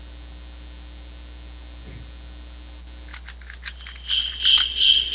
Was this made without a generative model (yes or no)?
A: yes